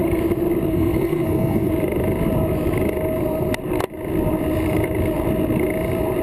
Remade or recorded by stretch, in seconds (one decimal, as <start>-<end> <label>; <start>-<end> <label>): 0.0-0.7 recorded; 0.7-1.7 remade; 1.7-6.2 recorded